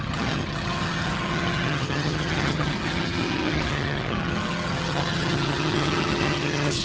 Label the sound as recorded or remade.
remade